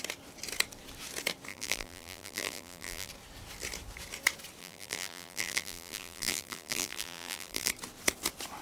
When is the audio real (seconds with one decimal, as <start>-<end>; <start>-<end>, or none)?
0.0-1.5; 3.1-4.6; 7.7-8.6